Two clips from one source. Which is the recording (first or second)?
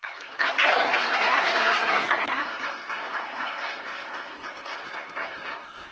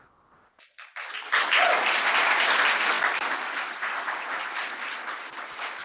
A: second